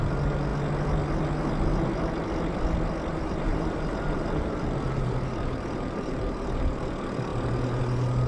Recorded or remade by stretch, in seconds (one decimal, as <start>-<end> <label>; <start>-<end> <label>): 0.0-3.1 recorded; 3.1-6.8 remade; 6.8-8.3 recorded